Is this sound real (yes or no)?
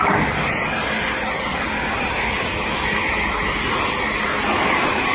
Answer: yes